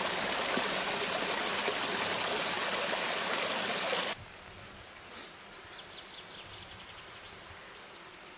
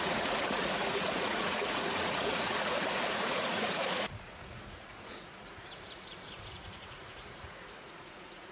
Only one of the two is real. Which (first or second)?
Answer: first